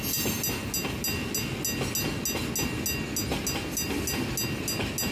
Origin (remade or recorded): recorded